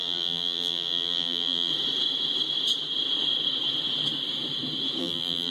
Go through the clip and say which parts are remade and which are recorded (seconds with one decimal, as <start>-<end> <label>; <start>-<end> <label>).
0.0-1.7 remade; 1.7-5.0 recorded; 5.0-5.5 remade